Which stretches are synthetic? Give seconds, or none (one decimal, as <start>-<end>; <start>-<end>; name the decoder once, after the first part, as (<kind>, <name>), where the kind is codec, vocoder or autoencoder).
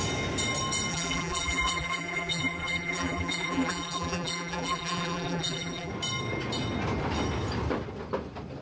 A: 0.9-5.9 (vocoder, BigVGAN v2)